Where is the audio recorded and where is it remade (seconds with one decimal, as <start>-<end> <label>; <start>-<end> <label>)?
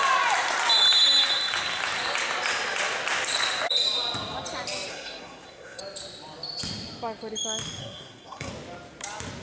0.0-4.9 recorded; 4.9-5.8 remade; 5.8-7.8 recorded; 7.8-8.5 remade; 8.5-9.4 recorded